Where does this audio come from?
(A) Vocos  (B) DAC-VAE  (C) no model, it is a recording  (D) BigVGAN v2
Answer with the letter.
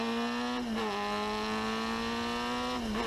C